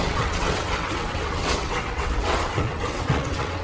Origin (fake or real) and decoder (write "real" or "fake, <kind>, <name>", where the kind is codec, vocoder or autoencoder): fake, vocoder, WaveNeXt